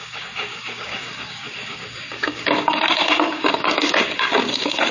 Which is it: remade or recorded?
remade